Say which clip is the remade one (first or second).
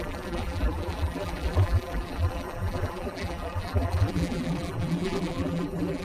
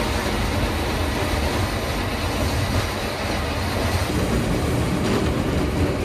first